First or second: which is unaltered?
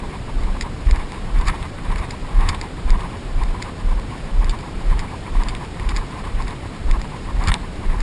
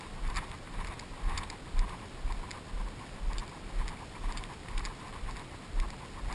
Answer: second